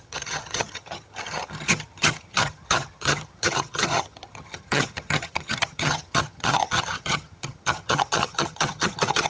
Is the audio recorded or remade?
remade